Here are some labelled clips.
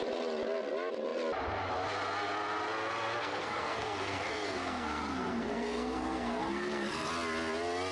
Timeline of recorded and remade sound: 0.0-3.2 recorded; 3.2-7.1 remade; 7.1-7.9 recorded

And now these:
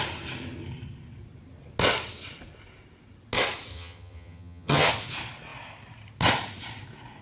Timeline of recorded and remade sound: 0.0-3.7 recorded; 3.7-4.9 remade; 4.9-7.2 recorded

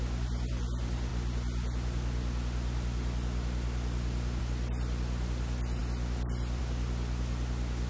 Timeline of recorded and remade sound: 0.0-7.9 recorded

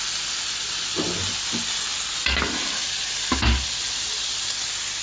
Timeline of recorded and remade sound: 0.0-5.0 recorded

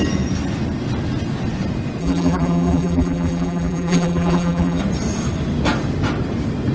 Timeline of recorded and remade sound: 0.0-2.0 recorded; 2.0-4.8 remade; 4.8-6.7 recorded

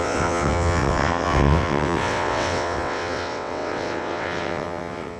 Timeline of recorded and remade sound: 0.0-5.2 remade